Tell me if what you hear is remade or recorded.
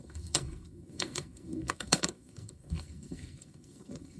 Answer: remade